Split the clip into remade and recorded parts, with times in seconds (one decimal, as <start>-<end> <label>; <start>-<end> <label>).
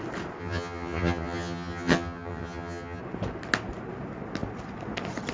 0.0-0.4 recorded; 0.4-3.0 remade; 3.0-5.3 recorded